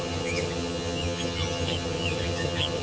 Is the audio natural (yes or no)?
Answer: no